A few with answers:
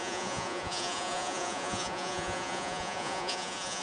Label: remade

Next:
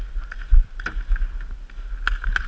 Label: recorded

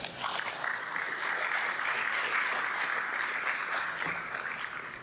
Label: recorded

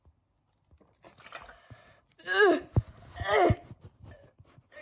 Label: recorded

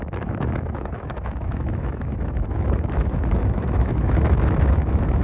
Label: remade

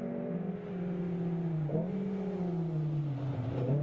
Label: recorded